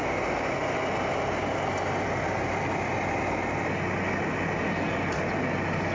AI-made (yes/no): no